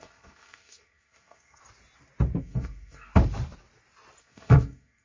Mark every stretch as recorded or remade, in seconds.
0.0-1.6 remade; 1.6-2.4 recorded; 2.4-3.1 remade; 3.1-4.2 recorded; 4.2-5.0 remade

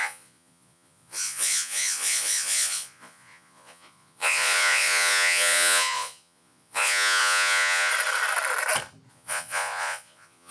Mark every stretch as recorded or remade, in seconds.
0.0-7.9 remade; 7.9-9.1 recorded; 9.1-10.5 remade

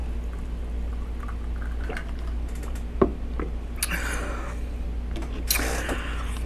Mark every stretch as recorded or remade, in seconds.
0.0-6.5 recorded

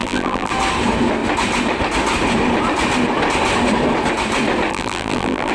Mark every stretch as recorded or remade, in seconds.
0.0-0.5 remade; 0.5-4.7 recorded; 4.7-5.5 remade

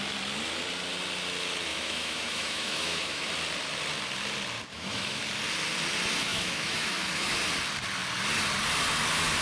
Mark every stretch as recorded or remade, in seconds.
0.0-1.7 recorded; 1.7-3.3 remade; 3.3-4.7 recorded; 4.7-5.2 remade; 5.2-6.3 recorded; 6.3-7.3 remade; 7.3-9.4 recorded

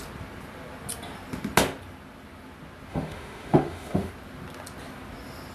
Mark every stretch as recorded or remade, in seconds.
0.0-2.9 recorded; 2.9-4.1 remade; 4.1-5.5 recorded

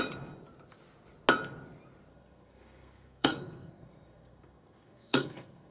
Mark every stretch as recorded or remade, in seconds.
0.0-2.1 recorded; 2.1-5.7 remade

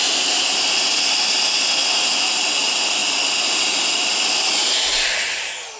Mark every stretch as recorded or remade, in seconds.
0.0-1.8 remade; 1.8-2.5 recorded; 2.5-3.0 remade; 3.0-4.1 recorded; 4.1-5.8 remade